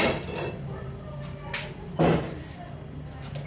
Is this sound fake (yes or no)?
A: no